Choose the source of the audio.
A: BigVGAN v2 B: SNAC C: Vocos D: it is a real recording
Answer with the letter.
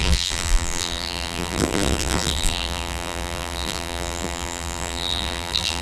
A